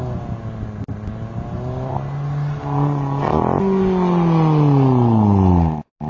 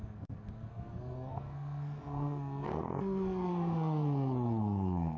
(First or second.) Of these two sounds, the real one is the first